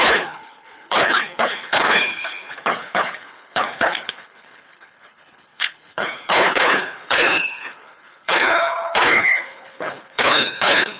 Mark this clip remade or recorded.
remade